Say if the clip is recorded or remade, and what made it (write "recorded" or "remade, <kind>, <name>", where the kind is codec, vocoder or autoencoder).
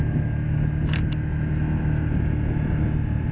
recorded